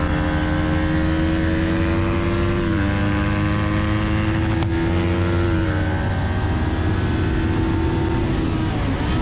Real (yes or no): yes